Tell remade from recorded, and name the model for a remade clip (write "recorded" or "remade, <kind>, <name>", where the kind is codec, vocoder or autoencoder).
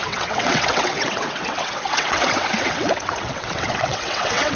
remade, vocoder, WaveNeXt